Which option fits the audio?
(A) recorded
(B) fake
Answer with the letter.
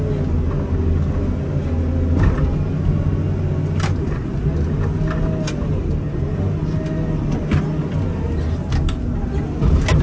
A